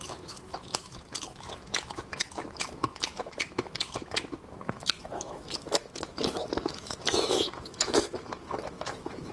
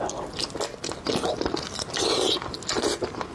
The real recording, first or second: second